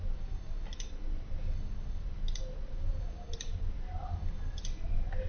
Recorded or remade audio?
recorded